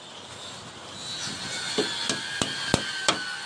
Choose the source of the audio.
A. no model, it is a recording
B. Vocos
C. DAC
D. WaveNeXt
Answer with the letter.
A